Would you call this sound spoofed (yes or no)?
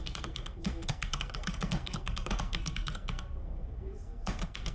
yes